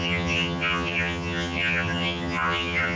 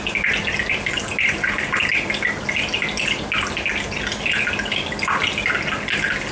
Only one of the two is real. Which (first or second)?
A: second